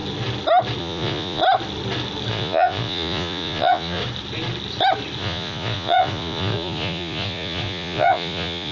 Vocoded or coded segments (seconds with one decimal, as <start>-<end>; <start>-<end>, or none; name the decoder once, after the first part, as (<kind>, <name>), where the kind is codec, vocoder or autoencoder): 0.8-1.4 (vocoder, Vocos); 2.3-4.0; 5.2-8.7